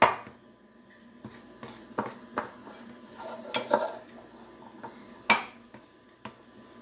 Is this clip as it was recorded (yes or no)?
yes